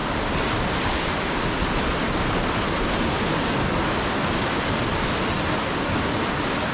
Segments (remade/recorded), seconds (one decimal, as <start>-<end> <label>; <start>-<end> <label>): 0.0-6.7 recorded